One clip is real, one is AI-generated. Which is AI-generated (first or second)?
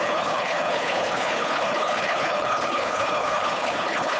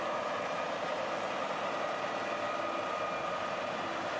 first